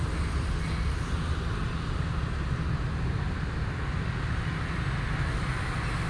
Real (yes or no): yes